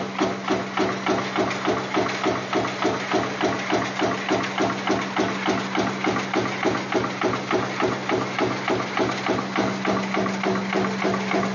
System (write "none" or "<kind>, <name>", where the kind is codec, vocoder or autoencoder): none